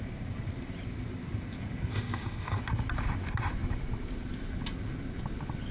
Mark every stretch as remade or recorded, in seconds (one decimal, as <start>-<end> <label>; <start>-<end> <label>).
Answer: 0.0-1.9 recorded; 1.9-2.6 remade; 2.6-5.7 recorded